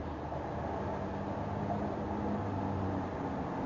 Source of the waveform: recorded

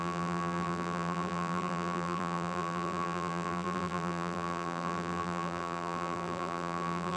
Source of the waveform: remade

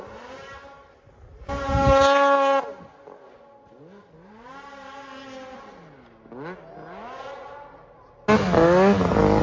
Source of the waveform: recorded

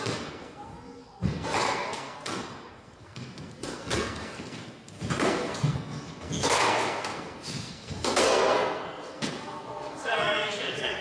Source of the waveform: remade